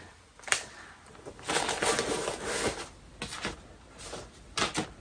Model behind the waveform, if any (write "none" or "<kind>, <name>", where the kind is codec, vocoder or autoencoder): none